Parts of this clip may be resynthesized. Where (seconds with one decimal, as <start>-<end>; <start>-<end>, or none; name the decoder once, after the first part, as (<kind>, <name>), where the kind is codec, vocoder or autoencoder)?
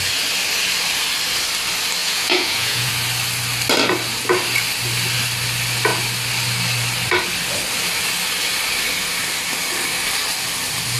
2.0-2.9 (vocoder, Vocos)